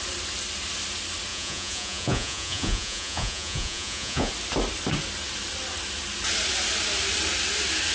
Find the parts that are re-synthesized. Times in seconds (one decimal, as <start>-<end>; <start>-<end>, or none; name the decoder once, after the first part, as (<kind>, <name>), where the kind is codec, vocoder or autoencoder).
1.3-4.3 (vocoder, Vocos)